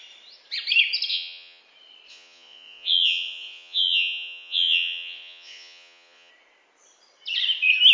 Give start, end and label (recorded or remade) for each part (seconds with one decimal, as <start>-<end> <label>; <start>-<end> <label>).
0.0-1.1 recorded; 1.1-1.6 remade; 1.6-2.1 recorded; 2.1-6.3 remade; 6.3-7.9 recorded